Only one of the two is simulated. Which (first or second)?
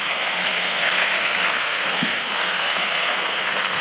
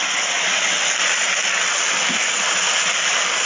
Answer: first